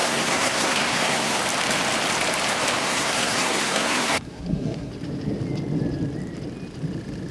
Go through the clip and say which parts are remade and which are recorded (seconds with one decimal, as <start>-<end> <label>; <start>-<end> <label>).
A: 0.0-1.4 remade; 1.4-2.8 recorded; 2.8-4.9 remade; 4.9-7.3 recorded